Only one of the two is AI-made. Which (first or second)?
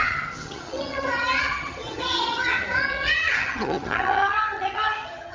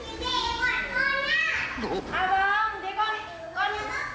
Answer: first